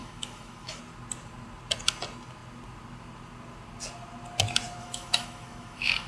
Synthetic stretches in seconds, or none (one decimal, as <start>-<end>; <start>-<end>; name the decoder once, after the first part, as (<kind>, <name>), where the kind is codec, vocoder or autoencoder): 0.0-0.8 (autoencoder, DAC-VAE); 4.8-6.1